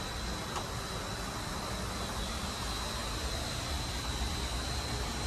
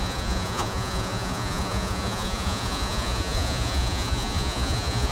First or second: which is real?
first